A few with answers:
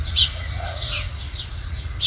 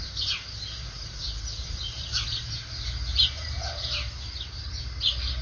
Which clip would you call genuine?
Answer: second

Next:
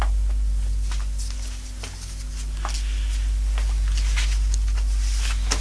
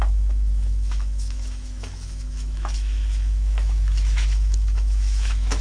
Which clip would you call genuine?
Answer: first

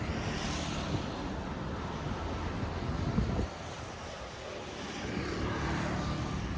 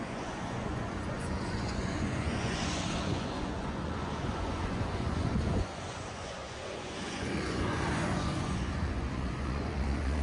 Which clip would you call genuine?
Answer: first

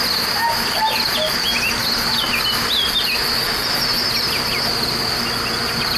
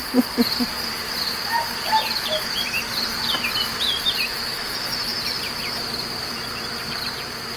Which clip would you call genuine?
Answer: first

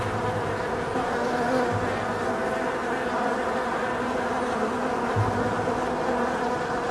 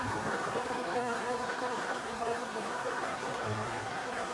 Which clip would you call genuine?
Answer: first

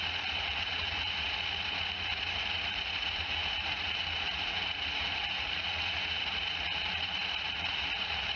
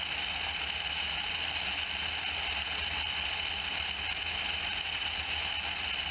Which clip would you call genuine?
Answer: second